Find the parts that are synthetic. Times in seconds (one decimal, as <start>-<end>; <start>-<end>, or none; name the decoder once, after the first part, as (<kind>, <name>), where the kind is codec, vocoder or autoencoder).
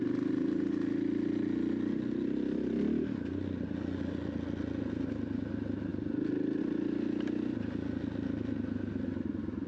none